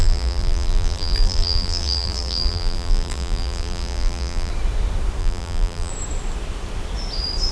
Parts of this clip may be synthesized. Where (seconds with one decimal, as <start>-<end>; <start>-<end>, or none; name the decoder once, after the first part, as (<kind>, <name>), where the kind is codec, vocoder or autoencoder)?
0.0-4.5 (vocoder, BigVGAN v2); 5.2-5.9